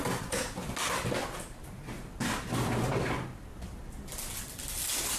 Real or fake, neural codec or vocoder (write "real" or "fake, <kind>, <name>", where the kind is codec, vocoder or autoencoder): real